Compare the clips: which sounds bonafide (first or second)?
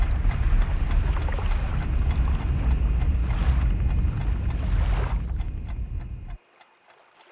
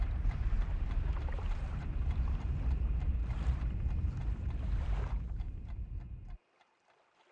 first